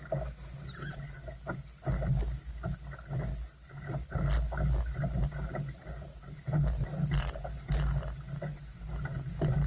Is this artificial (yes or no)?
no